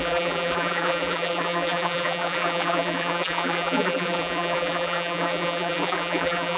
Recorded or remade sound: remade